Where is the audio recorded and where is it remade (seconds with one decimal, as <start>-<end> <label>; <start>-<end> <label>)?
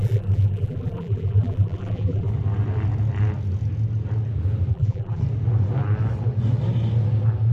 0.0-2.3 remade; 2.3-4.7 recorded; 4.7-5.2 remade; 5.2-7.5 recorded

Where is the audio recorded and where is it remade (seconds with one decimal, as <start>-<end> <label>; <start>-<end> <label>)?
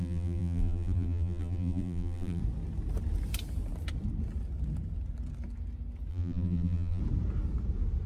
0.0-2.4 remade; 2.4-6.1 recorded; 6.1-7.0 remade; 7.0-8.1 recorded